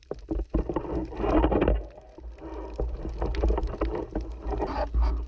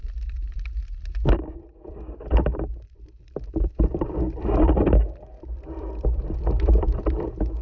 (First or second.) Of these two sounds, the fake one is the second